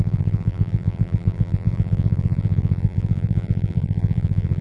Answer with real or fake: fake